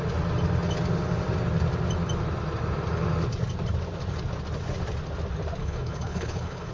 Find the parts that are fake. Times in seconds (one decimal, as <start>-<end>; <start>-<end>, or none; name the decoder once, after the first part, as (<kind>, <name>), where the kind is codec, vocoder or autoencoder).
5.6-6.7 (codec, HILCodec)